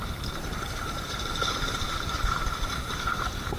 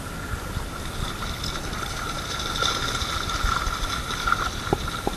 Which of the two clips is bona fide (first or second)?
second